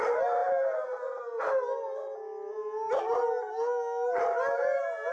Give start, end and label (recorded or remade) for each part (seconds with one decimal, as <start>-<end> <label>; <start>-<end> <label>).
0.0-5.1 recorded